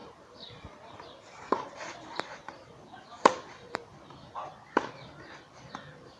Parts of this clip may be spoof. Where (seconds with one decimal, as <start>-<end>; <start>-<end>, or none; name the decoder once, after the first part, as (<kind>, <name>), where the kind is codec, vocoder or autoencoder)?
0.0-3.9 (vocoder, BigVGAN v2); 5.8-6.2